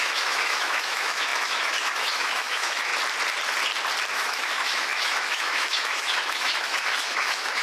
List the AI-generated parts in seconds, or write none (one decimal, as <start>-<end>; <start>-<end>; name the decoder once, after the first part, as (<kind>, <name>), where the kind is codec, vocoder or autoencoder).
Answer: 0.0-2.9 (autoencoder, DAC-VAE); 4.1-7.6